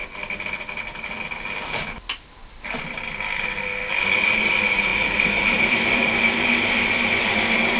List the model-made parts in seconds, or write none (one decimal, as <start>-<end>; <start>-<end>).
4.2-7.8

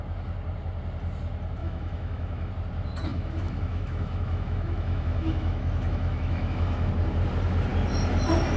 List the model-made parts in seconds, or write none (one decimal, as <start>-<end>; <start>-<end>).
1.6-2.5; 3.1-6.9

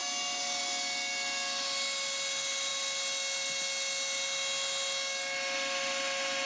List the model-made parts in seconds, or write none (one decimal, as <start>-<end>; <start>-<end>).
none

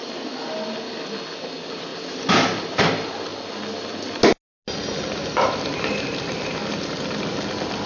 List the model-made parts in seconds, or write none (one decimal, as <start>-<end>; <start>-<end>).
none